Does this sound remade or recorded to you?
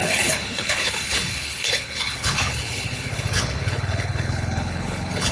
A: remade